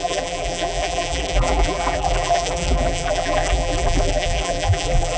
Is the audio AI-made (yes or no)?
yes